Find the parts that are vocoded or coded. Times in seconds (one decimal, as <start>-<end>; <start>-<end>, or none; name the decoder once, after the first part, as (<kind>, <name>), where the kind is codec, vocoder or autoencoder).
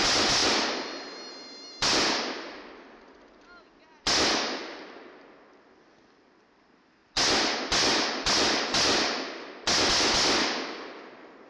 none